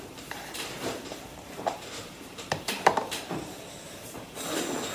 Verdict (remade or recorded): remade